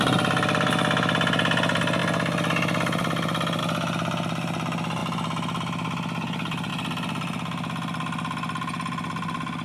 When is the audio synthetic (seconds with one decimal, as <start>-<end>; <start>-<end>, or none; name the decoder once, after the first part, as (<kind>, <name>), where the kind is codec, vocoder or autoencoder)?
none